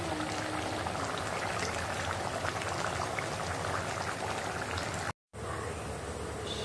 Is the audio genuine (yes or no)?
yes